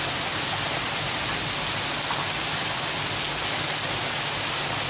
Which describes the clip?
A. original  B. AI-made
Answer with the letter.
A